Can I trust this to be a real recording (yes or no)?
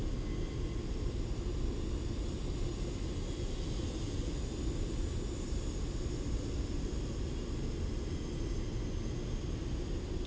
yes